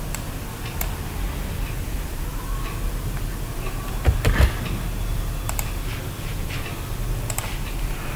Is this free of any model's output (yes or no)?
yes